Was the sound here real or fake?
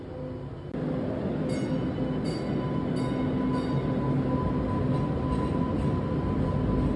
real